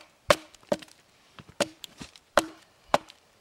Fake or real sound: fake